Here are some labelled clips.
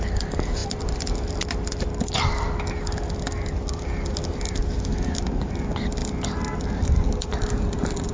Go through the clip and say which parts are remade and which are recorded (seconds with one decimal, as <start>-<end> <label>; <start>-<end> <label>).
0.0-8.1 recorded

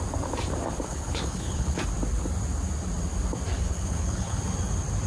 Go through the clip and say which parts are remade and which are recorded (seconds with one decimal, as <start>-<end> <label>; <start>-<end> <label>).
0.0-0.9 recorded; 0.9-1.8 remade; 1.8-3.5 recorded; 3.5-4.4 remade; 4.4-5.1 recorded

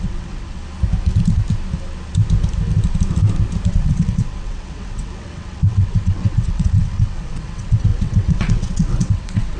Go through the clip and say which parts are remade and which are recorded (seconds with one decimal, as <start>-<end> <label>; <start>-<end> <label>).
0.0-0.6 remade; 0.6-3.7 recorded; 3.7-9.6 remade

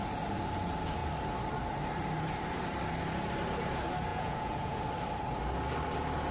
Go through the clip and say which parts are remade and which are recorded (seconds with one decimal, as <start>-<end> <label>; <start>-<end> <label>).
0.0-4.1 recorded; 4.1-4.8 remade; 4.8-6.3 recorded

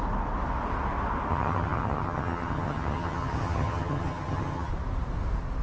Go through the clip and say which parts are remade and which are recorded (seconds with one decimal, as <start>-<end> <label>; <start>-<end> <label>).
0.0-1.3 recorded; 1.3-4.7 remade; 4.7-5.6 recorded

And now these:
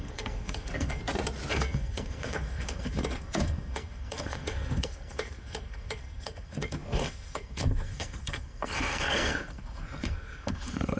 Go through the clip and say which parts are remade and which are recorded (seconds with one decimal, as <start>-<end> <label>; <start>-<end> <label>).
0.0-1.0 remade; 1.0-1.5 recorded; 1.5-11.0 remade